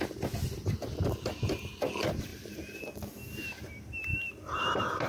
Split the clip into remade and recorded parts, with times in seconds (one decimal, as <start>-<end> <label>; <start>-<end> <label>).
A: 0.0-2.3 recorded; 2.3-2.8 remade; 2.8-4.1 recorded; 4.1-5.1 remade